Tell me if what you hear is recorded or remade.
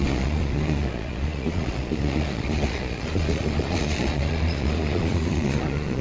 remade